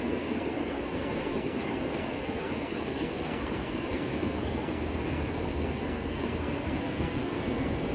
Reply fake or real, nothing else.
fake